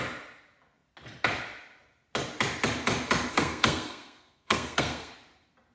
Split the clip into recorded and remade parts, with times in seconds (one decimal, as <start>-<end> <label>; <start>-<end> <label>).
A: 0.0-3.3 recorded; 3.3-5.1 remade; 5.1-5.7 recorded

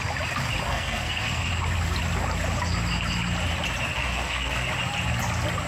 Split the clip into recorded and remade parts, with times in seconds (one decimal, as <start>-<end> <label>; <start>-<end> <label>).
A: 0.0-0.7 recorded; 0.7-1.5 remade; 1.5-4.0 recorded; 4.0-4.7 remade; 4.7-5.7 recorded